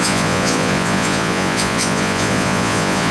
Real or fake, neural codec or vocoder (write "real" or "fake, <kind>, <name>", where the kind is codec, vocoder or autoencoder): fake, vocoder, Vocos